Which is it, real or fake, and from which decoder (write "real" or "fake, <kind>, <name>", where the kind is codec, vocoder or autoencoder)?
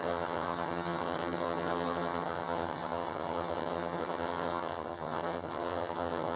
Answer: fake, vocoder, HiFi-GAN